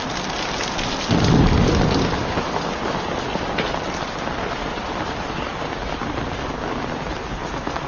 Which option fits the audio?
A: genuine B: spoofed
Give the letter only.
A